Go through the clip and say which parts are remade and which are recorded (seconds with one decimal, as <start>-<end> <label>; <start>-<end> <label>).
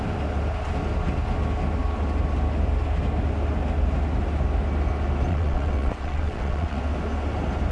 0.0-5.3 recorded; 5.3-6.8 remade; 6.8-7.7 recorded